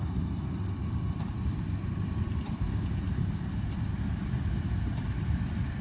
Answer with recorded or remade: recorded